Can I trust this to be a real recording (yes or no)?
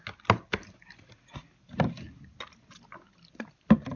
yes